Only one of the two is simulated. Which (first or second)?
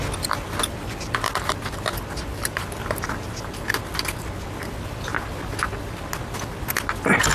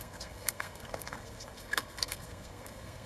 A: second